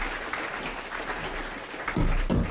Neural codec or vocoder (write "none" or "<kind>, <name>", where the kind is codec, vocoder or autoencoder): none